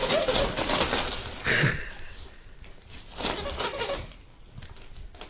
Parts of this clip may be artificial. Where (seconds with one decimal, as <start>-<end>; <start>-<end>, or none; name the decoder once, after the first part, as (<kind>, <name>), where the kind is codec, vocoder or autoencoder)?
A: 0.0-0.8 (vocoder, Vocos); 3.6-4.1